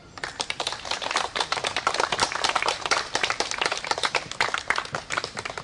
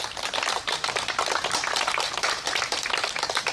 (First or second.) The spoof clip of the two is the first